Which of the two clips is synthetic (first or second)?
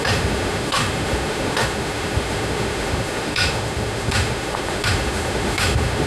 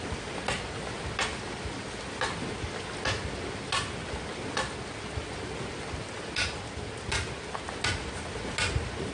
first